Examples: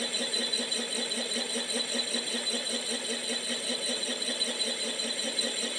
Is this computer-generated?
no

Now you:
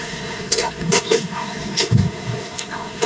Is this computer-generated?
yes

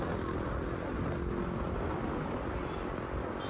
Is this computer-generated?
no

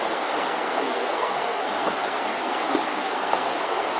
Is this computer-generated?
yes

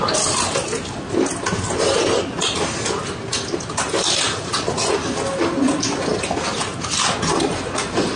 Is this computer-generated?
no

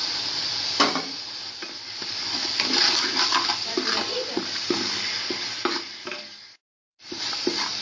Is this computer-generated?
yes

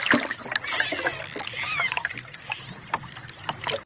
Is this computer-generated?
no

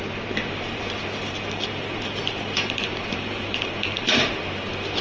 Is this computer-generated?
yes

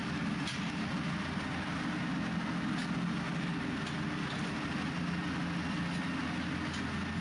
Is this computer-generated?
no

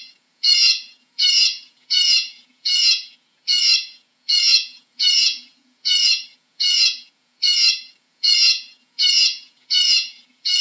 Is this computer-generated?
yes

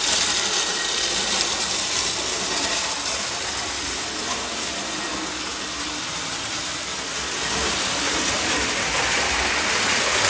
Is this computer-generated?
yes